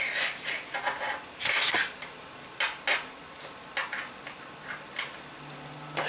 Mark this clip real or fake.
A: real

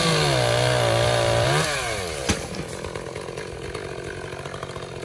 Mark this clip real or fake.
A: real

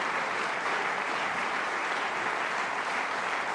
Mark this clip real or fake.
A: fake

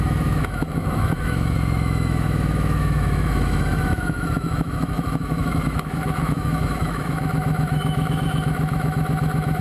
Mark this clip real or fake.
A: fake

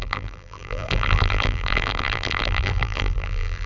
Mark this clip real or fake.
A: fake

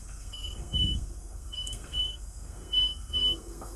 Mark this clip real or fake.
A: fake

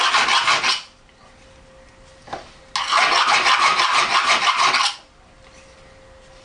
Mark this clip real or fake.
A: real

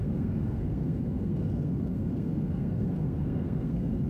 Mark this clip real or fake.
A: fake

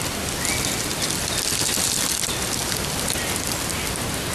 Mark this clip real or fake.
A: real